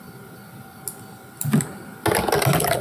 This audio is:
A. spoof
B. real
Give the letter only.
B